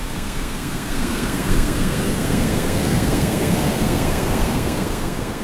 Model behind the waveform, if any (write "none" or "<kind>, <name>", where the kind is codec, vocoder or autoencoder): codec, SNAC